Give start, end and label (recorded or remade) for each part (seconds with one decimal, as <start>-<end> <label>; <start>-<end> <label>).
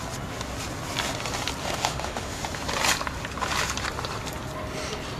0.0-1.6 recorded; 1.6-2.4 remade; 2.4-5.2 recorded